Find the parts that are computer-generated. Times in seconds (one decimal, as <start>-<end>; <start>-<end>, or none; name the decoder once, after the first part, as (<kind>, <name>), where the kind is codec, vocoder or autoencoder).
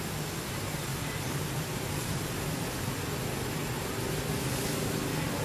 0.9-2.2 (vocoder, BigVGAN v2)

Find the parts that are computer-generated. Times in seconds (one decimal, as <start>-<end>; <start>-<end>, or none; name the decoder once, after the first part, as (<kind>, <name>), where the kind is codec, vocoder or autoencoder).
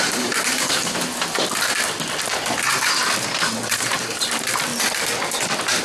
0.0-1.4 (vocoder, BigVGAN v2); 2.3-4.7